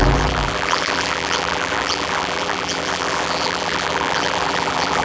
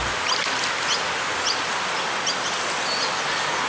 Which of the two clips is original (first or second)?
second